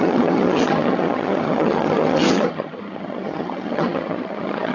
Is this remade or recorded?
remade